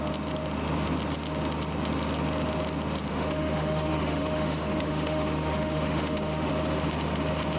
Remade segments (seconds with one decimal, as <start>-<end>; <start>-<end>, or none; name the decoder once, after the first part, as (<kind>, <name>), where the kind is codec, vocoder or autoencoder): 3.1-6.5 (autoencoder, DAC-VAE)